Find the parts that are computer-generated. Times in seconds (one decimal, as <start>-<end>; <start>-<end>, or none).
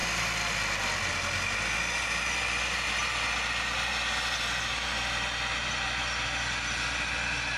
none